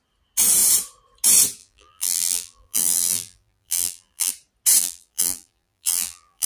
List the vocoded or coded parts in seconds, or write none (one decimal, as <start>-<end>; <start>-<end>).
1.6-4.3; 4.8-6.5

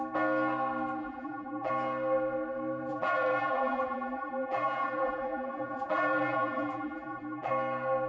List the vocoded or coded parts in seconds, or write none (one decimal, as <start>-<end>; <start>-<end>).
1.0-1.7; 2.9-7.5

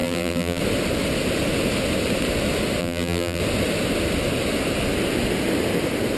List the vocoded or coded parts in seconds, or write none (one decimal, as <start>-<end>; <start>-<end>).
0.0-0.6; 2.8-3.4

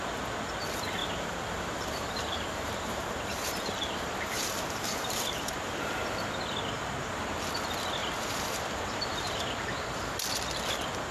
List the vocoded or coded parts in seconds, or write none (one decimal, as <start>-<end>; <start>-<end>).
1.0-5.8; 8.0-9.4